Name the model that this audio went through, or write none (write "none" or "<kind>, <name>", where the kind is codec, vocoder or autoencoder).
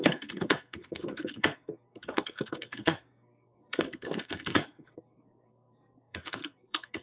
codec, SNAC